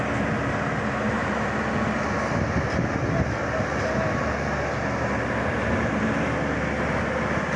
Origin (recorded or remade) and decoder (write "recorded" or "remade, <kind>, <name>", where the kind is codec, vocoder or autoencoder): recorded